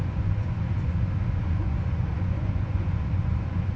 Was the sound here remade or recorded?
remade